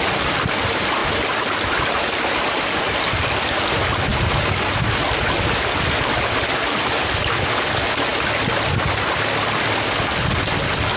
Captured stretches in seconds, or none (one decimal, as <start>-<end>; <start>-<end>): 0.0-11.0